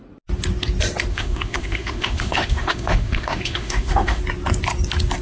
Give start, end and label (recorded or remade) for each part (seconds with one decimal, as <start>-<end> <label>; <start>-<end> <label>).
0.0-1.1 recorded; 1.1-4.2 remade; 4.2-5.2 recorded